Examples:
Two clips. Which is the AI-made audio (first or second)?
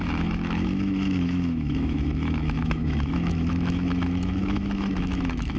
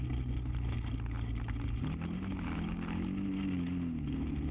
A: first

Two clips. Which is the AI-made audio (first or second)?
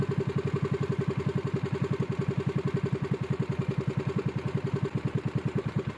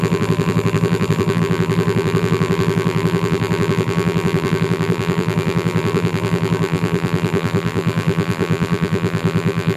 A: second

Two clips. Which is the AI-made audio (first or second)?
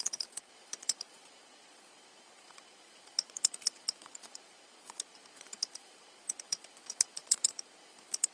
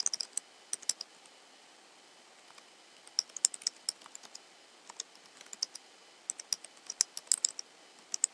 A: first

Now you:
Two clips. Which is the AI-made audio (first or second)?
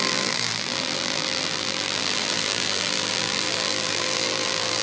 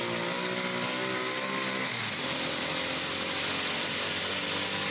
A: first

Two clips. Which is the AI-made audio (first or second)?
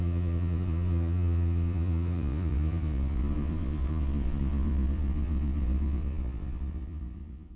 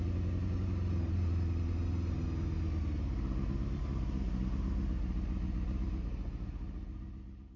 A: first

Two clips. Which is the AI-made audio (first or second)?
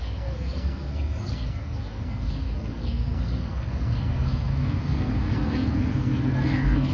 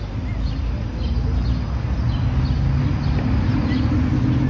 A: first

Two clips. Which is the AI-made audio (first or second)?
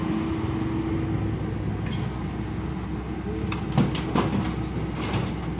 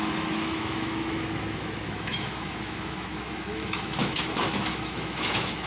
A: second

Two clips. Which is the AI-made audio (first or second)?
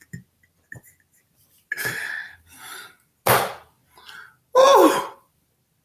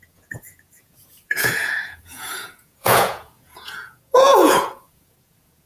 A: second